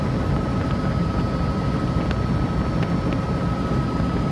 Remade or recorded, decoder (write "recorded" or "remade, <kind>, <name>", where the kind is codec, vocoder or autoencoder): recorded